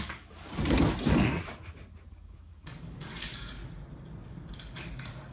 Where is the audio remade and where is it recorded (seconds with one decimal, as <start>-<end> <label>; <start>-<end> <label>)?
0.0-0.5 remade; 0.5-2.1 recorded; 2.1-3.6 remade; 3.6-4.2 recorded; 4.2-5.3 remade